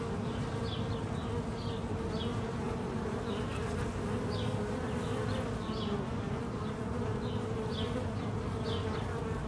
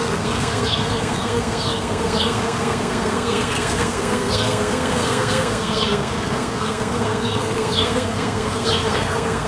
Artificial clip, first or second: second